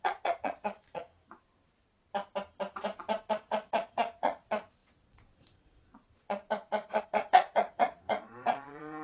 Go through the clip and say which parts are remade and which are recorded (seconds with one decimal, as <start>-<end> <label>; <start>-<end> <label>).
0.0-1.1 remade; 1.1-3.3 recorded; 3.3-9.0 remade